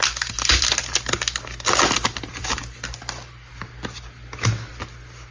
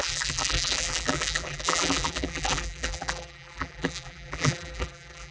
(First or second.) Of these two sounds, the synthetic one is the second